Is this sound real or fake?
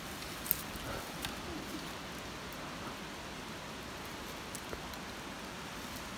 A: real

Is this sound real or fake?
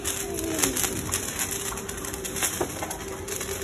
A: real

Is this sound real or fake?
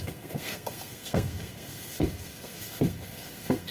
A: fake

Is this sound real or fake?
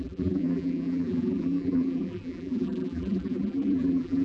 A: fake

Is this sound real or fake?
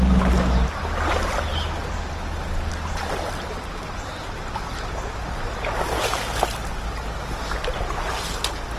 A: real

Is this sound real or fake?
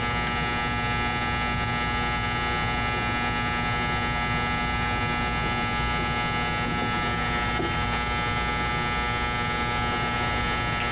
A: real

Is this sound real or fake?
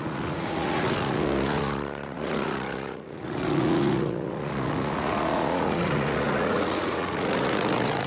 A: fake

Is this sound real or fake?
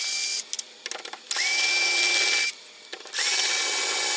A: real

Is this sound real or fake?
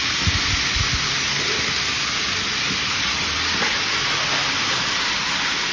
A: real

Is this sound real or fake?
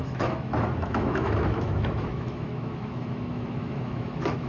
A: fake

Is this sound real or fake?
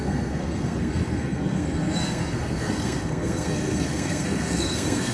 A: fake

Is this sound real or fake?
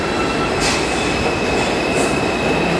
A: real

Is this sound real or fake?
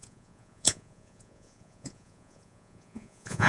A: fake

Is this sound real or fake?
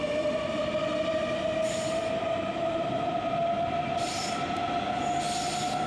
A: fake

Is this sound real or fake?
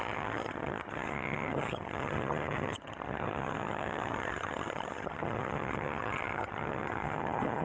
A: fake